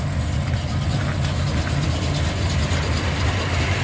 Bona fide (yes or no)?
yes